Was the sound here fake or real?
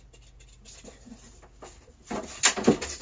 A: real